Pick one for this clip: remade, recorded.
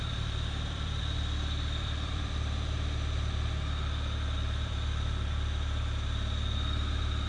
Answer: remade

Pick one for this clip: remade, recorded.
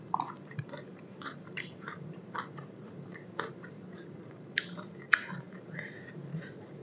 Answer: remade